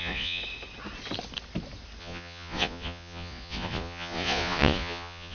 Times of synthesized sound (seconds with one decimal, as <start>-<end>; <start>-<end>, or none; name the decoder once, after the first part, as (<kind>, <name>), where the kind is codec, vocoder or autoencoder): 0.0-0.4 (vocoder, Vocos); 2.0-5.3